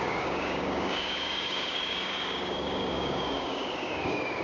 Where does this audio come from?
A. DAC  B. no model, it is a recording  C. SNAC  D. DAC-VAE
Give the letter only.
A